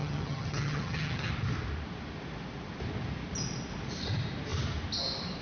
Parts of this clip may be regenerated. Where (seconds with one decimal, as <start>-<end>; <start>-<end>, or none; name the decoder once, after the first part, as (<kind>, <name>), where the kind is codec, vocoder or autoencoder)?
0.0-1.3 (vocoder, HiFi-GAN)